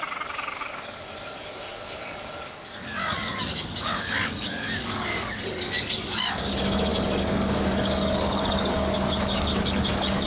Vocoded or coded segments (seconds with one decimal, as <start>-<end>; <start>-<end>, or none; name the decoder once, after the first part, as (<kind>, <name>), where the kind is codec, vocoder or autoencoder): 0.0-10.3 (codec, DAC)